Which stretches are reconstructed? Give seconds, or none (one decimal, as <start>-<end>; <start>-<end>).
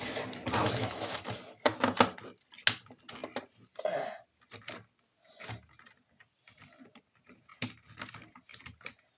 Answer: 0.6-1.2